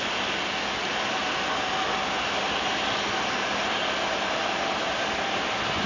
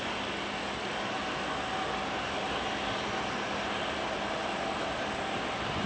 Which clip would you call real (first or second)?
second